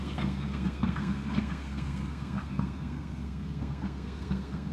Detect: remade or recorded remade